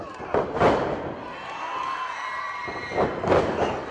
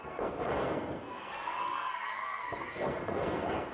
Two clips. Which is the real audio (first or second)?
first